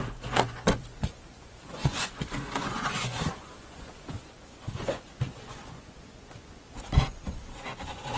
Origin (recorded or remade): remade